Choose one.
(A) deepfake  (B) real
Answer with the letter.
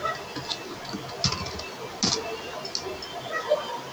B